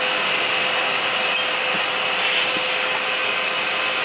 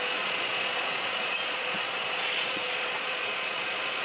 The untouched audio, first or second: first